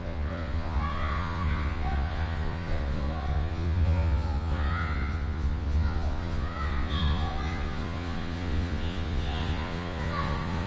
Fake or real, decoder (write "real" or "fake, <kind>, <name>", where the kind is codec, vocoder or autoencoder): fake, vocoder, Vocos